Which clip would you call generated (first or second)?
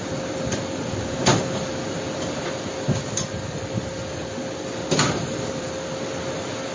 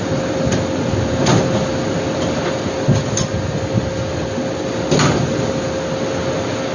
first